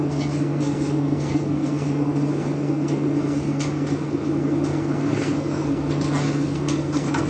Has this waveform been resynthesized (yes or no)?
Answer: yes